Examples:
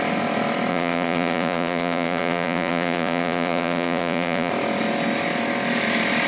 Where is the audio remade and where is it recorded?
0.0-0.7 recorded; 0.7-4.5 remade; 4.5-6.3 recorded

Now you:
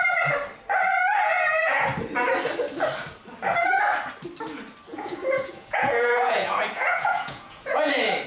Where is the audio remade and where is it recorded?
0.0-1.3 recorded; 1.3-1.8 remade; 1.8-4.9 recorded; 4.9-7.9 remade; 7.9-8.3 recorded

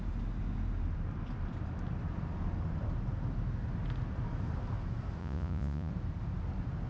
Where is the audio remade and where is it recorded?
0.0-5.2 recorded; 5.2-5.9 remade; 5.9-6.9 recorded